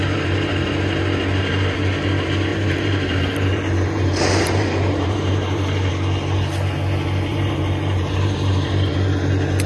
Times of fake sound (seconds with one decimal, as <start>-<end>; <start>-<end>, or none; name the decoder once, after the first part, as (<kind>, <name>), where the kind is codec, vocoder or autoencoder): 0.0-0.7 (vocoder, BigVGAN v2); 2.5-5.9; 7.3-8.9